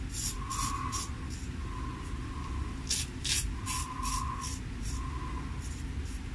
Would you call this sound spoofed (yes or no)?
no